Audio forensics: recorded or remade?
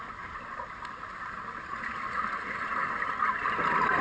recorded